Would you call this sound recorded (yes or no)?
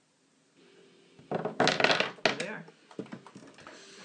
yes